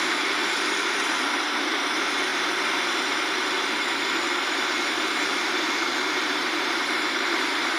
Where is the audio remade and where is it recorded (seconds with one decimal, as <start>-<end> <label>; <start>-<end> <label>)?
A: 0.0-7.8 remade